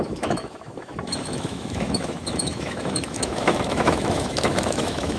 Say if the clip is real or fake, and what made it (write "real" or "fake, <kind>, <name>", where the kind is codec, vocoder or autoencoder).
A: fake, autoencoder, DAC-VAE